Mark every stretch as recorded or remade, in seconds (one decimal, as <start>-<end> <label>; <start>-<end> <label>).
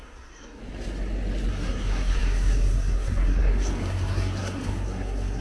0.0-0.6 remade; 0.6-1.5 recorded; 1.5-5.4 remade